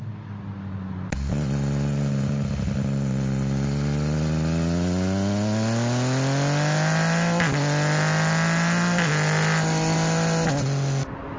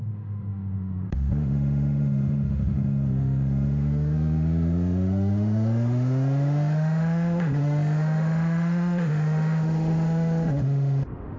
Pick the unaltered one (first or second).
first